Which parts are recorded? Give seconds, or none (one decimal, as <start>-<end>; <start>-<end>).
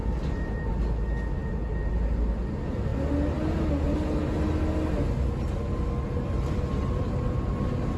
0.0-8.0